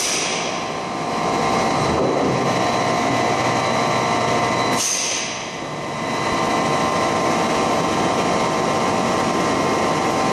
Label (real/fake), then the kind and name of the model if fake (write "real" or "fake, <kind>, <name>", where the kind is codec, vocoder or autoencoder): real